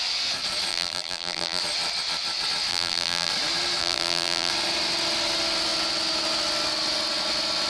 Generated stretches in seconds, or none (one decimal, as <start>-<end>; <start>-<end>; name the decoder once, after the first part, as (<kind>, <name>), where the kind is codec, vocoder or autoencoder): 0.7-1.6 (vocoder, BigVGAN v2); 2.7-3.3; 3.8-4.5